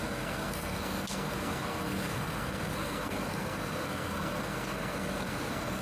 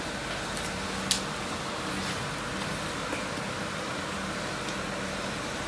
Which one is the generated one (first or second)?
first